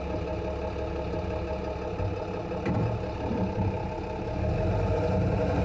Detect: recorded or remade recorded